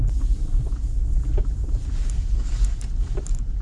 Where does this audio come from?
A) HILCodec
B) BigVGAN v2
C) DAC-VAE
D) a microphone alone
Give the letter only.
D